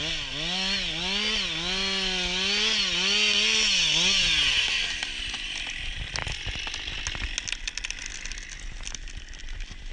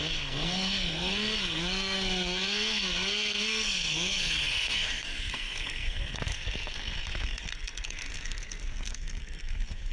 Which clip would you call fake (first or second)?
second